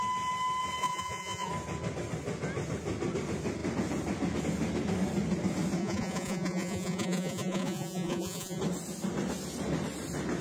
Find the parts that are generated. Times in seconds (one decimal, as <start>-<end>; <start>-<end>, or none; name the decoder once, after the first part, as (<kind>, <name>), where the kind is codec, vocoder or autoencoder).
0.8-1.5 (vocoder, Vocos); 5.8-8.6